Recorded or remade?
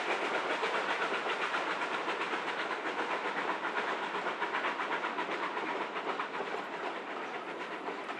recorded